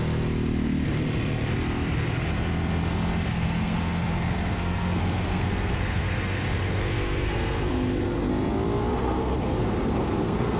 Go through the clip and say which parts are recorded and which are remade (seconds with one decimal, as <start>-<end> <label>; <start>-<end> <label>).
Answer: 0.0-3.3 recorded; 3.3-8.3 remade; 8.3-8.9 recorded; 8.9-10.6 remade